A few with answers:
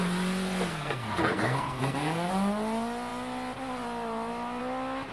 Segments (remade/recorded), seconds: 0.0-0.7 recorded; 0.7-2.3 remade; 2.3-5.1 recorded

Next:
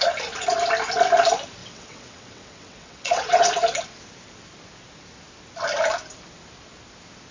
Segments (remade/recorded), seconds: 0.0-1.6 recorded; 1.6-3.6 remade; 3.6-7.3 recorded

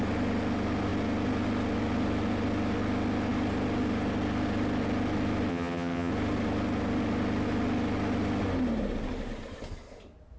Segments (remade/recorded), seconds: 0.0-5.5 recorded; 5.5-6.1 remade; 6.1-10.4 recorded

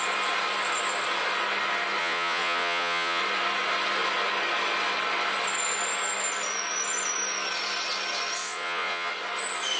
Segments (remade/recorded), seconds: 0.0-2.0 recorded; 2.0-3.2 remade; 3.2-8.4 recorded; 8.4-9.1 remade; 9.1-9.8 recorded